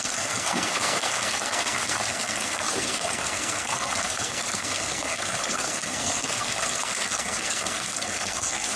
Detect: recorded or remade remade